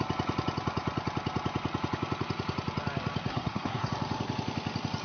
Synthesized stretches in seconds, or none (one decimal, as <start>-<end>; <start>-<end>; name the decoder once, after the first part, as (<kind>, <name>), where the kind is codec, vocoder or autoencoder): 3.3-3.9 (codec, SNAC)